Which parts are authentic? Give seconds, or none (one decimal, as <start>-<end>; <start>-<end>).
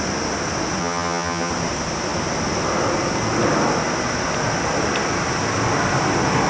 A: 0.0-0.8; 1.5-6.5